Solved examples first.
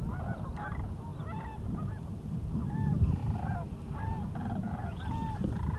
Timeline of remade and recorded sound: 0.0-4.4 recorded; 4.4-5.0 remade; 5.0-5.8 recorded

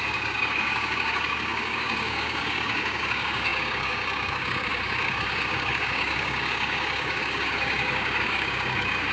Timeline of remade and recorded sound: 0.0-9.1 remade

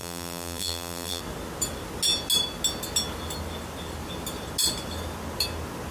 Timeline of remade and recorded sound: 0.0-1.2 remade; 1.2-5.9 recorded

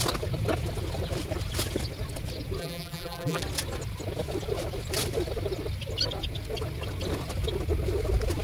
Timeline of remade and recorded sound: 0.0-2.6 recorded; 2.6-3.4 remade; 3.4-8.4 recorded

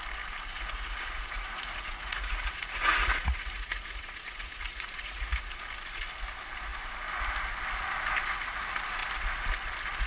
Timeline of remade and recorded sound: 0.0-0.5 recorded; 0.5-5.5 remade; 5.5-10.1 recorded

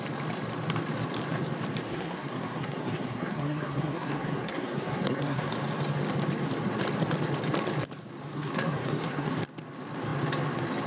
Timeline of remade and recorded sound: 0.0-1.9 recorded; 1.9-5.5 remade; 5.5-8.3 recorded; 8.3-9.3 remade; 9.3-10.9 recorded

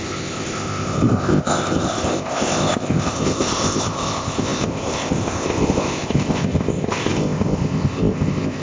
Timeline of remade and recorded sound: 0.0-8.6 remade